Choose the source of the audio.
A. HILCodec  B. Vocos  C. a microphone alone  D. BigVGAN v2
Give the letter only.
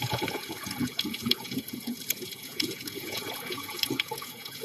B